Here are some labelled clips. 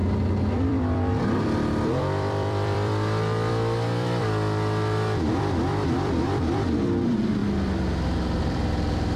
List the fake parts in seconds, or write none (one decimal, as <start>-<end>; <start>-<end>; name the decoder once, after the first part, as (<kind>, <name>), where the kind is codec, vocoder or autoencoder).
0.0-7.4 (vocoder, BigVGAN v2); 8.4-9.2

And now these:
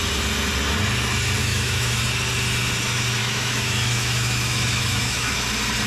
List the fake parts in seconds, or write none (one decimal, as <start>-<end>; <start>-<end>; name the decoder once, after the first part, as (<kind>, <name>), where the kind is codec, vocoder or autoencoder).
1.4-2.0 (autoencoder, DAC-VAE); 3.2-5.4

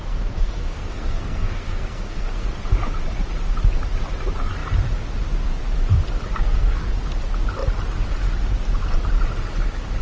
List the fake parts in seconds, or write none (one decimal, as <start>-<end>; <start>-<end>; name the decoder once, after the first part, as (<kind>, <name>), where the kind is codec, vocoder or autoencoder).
0.0-2.5 (codec, SNAC); 6.4-6.9

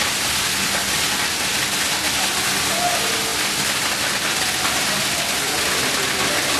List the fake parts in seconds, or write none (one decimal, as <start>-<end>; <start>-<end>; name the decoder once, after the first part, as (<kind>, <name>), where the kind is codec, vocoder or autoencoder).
none

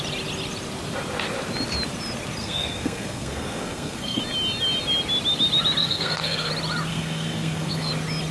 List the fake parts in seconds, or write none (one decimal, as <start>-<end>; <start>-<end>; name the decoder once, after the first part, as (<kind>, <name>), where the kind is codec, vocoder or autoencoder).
2.4-4.2 (codec, SNAC); 5.8-6.5; 6.9-7.9